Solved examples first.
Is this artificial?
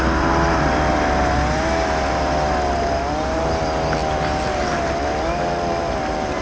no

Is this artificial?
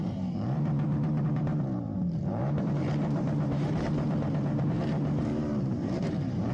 yes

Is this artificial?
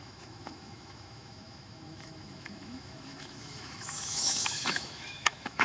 yes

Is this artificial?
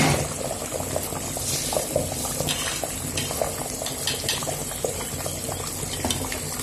no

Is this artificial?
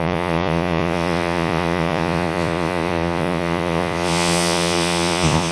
yes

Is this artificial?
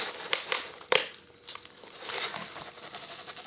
yes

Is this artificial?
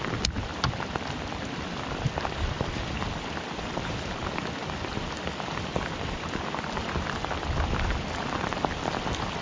yes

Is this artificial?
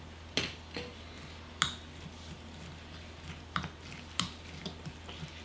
no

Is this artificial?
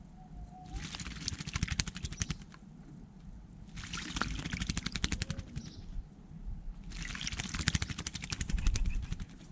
no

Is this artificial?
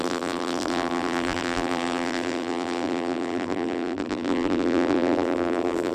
yes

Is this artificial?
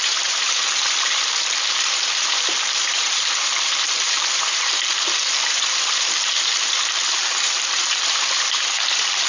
yes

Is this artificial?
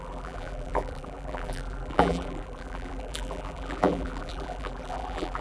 yes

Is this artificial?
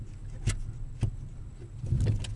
no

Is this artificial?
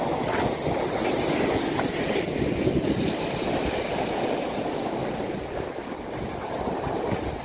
no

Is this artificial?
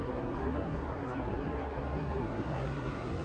yes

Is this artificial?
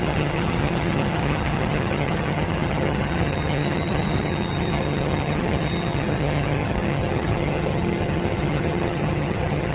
yes